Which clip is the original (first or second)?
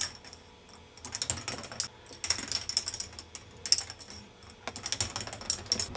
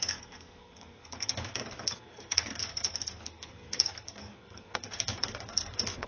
first